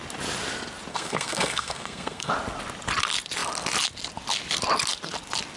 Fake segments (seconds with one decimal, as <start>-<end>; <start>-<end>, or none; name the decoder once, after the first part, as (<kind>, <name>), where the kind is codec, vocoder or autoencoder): 0.9-2.3 (codec, SNAC)